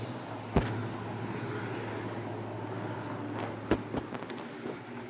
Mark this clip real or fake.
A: real